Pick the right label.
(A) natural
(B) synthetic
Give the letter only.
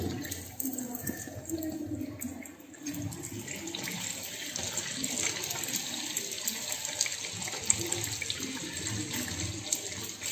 A